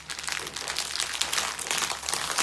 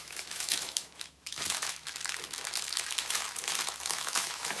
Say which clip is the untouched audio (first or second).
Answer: first